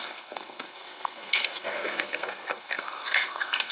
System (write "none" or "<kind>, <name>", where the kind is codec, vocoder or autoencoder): codec, SNAC